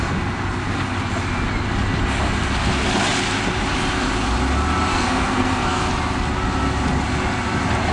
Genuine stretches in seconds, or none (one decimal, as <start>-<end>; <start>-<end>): 0.0-4.9; 5.9-7.9